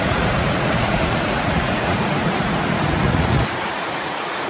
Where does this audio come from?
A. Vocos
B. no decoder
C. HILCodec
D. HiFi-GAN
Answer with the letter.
A